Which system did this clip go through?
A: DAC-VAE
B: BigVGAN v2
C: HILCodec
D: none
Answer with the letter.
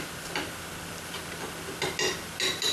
D